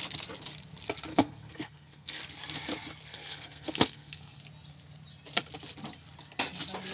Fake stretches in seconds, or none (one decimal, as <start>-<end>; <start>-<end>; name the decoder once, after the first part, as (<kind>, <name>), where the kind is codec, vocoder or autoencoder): 1.1-2.2 (codec, SNAC); 3.0-4.4